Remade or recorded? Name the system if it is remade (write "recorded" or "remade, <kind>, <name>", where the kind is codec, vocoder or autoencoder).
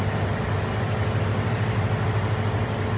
recorded